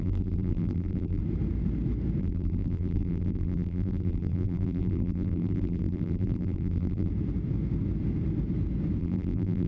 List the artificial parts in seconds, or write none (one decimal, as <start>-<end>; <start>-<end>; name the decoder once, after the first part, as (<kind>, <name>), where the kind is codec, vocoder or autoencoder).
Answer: 0.0-1.2 (vocoder, BigVGAN v2); 2.2-7.1; 9.0-9.7